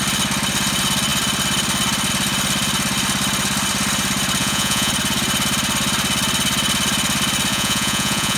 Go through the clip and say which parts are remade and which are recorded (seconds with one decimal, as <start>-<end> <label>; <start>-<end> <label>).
0.0-4.4 recorded; 4.4-4.9 remade; 4.9-7.5 recorded; 7.5-8.4 remade